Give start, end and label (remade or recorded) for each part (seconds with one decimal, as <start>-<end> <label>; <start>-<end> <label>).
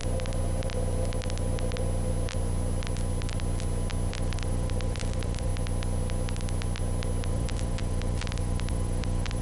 0.0-4.1 recorded; 4.1-5.5 remade; 5.5-7.3 recorded; 7.3-9.4 remade